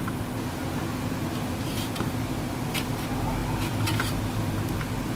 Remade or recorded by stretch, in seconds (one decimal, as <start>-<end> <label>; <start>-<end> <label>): 0.0-3.4 recorded; 3.4-4.2 remade; 4.2-5.2 recorded